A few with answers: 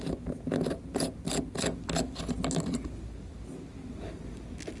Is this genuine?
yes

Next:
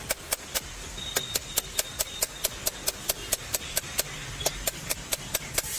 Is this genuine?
yes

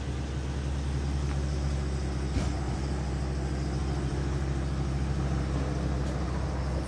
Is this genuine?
yes